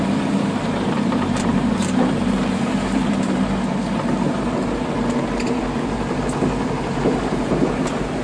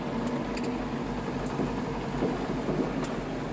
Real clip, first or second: second